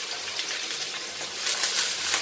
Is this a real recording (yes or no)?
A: yes